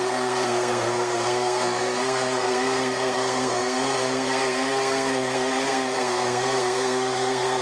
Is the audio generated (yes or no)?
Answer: yes